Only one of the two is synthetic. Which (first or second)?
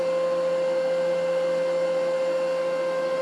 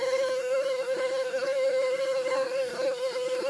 second